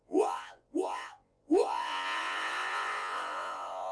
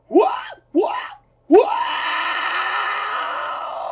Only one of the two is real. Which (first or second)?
second